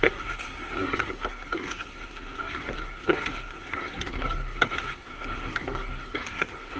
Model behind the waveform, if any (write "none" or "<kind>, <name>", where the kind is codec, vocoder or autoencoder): codec, SNAC